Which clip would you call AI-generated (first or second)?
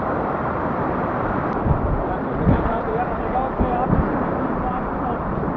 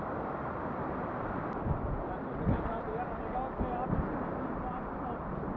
first